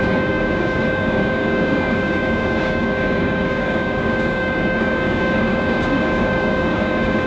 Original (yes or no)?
no